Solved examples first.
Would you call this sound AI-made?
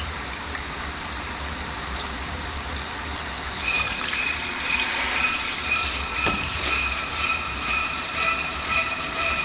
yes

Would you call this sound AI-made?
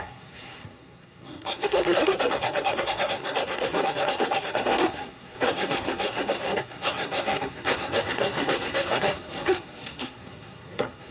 yes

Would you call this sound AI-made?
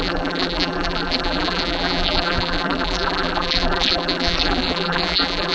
yes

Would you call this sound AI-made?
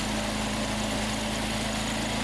no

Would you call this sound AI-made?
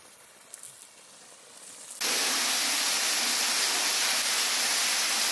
no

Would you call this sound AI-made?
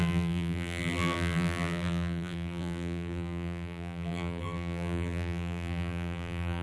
yes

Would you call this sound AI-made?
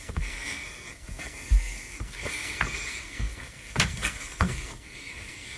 yes